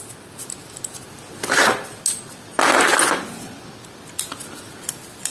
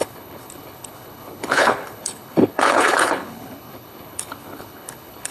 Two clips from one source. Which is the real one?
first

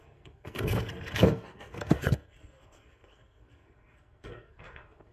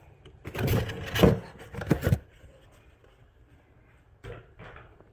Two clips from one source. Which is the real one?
second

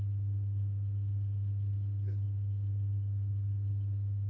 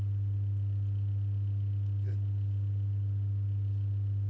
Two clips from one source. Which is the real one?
second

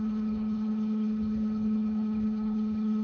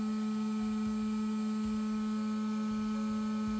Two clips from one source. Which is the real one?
second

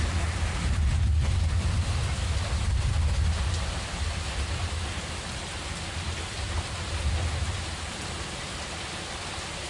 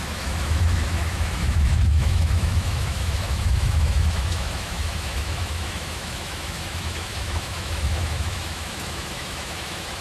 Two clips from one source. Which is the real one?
first